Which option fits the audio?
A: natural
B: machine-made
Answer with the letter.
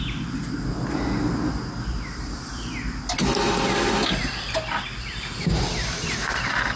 A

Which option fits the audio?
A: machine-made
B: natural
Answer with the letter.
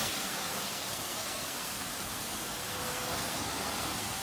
A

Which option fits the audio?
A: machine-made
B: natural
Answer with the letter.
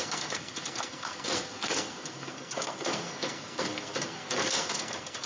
A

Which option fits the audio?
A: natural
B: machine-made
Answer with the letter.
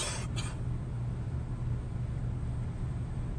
A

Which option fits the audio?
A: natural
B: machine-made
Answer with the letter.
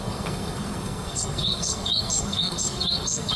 B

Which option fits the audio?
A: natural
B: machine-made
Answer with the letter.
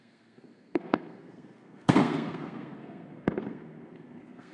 B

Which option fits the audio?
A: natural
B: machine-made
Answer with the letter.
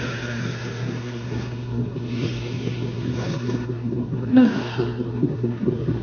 B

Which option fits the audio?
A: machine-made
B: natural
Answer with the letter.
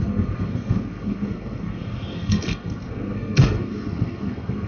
A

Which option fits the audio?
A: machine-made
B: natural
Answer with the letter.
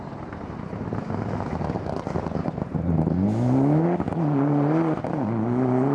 B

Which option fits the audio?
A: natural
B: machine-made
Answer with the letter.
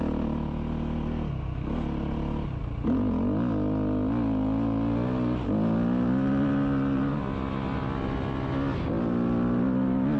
A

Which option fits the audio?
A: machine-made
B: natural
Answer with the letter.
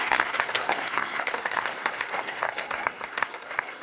A